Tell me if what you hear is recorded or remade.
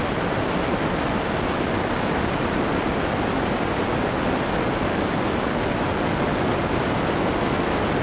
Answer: recorded